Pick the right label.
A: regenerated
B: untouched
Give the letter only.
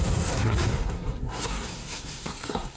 A